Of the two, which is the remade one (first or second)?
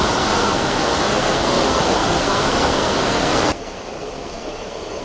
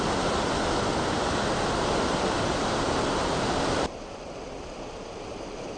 first